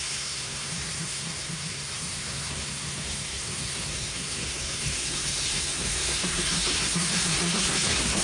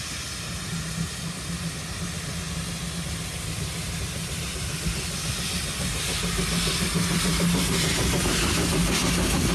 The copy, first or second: first